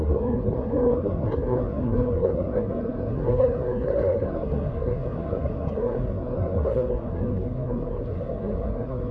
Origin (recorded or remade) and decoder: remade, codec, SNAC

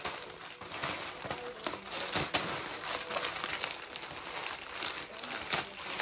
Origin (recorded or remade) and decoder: recorded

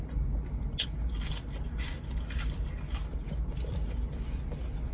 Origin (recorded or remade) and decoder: recorded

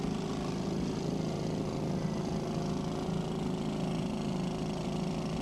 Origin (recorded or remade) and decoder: recorded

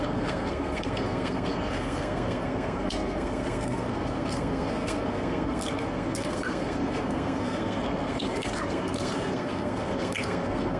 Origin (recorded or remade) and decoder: remade, codec, SNAC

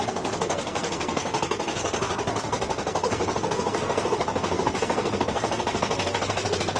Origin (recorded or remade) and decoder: remade, codec, SNAC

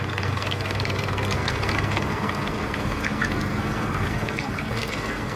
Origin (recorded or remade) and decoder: remade, codec, SNAC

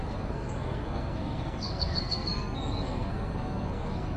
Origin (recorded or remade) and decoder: remade, codec, SNAC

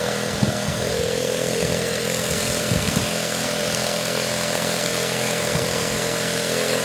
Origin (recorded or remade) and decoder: remade, codec, SNAC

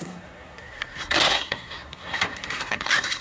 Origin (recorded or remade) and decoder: remade, codec, SNAC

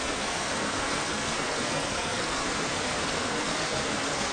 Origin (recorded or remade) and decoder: remade, codec, SNAC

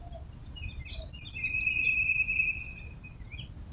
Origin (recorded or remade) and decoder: recorded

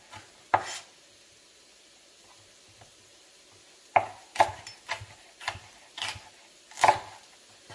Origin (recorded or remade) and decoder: recorded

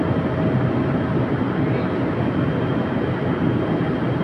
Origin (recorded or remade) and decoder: recorded